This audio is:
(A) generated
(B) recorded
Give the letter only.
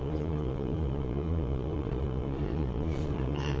A